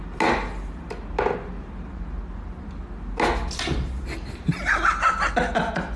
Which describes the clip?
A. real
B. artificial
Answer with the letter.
A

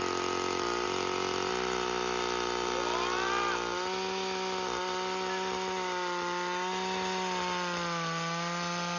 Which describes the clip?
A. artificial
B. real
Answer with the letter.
B